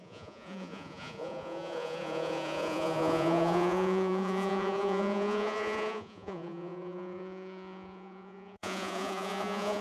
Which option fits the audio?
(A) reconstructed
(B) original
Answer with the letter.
A